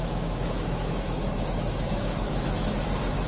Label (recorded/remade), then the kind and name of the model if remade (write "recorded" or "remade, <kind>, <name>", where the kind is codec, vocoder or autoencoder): remade, autoencoder, DAC-VAE